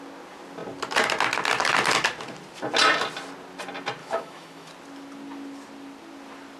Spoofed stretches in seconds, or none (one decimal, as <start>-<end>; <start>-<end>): 4.0-4.7